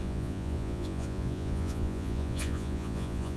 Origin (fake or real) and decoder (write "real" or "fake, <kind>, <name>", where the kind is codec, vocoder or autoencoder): fake, vocoder, Vocos